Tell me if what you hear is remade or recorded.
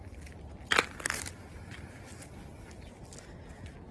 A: recorded